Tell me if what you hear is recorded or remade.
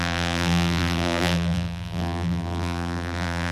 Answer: remade